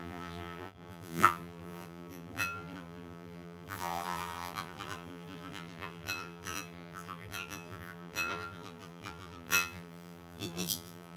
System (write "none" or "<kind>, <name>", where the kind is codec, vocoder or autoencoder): vocoder, BigVGAN v2